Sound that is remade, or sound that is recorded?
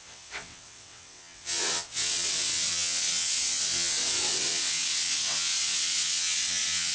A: remade